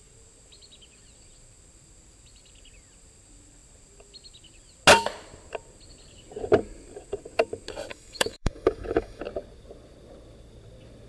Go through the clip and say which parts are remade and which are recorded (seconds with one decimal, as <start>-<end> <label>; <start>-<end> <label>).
0.0-7.9 recorded; 7.9-9.2 remade; 9.2-11.1 recorded